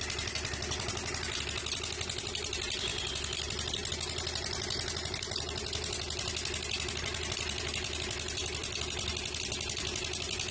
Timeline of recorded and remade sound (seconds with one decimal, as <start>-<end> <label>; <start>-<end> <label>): 0.0-10.5 recorded